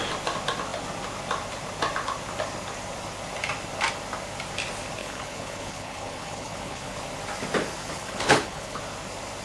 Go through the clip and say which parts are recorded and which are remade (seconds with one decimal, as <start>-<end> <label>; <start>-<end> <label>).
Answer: 0.0-5.0 recorded; 5.0-7.0 remade; 7.0-7.8 recorded; 7.8-8.8 remade; 8.8-9.4 recorded